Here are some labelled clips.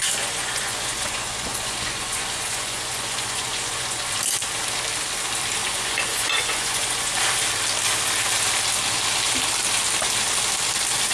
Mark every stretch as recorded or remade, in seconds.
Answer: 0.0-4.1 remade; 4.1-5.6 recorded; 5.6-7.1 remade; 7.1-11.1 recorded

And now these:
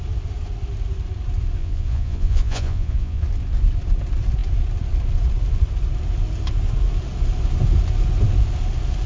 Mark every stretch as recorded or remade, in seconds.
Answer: 0.0-1.6 recorded; 1.6-3.2 remade; 3.2-9.1 recorded

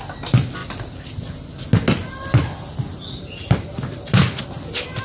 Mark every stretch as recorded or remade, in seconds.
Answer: 0.0-5.0 recorded

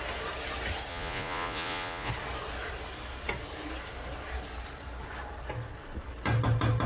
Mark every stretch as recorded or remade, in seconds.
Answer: 0.0-0.9 recorded; 0.9-2.1 remade; 2.1-6.9 recorded

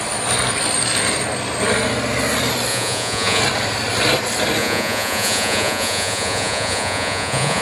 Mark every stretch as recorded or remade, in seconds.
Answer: 0.0-2.7 recorded; 2.7-3.4 remade; 3.4-4.6 recorded; 4.6-7.6 remade

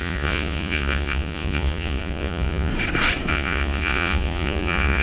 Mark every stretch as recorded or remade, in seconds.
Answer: 0.0-2.7 remade; 2.7-3.3 recorded; 3.3-5.0 remade